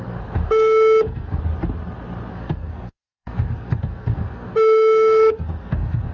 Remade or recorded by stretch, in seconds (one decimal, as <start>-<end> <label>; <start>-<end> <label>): 0.0-1.4 remade; 1.4-2.3 recorded; 2.3-6.1 remade